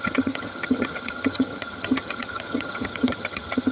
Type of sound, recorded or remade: remade